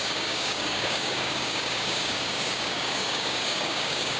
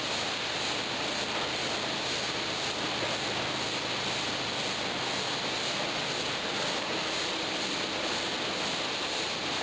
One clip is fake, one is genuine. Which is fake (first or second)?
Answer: first